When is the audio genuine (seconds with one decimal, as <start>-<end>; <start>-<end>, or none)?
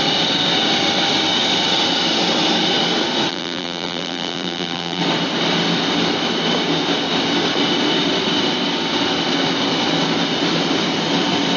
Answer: 0.0-3.3; 5.0-11.6